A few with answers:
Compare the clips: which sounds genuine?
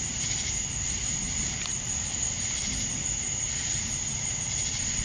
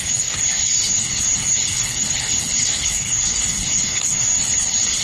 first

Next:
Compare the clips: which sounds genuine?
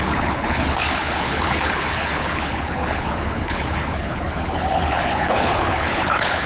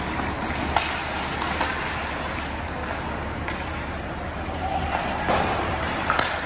second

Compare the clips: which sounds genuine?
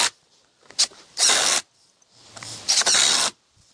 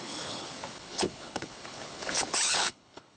first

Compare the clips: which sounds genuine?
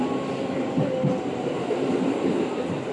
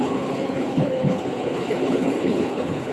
first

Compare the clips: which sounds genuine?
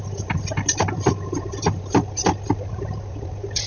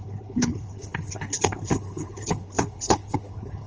first